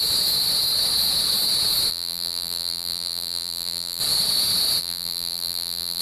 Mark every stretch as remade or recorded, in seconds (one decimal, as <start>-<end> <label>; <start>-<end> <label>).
0.0-1.9 recorded; 1.9-4.0 remade; 4.0-4.8 recorded; 4.8-6.0 remade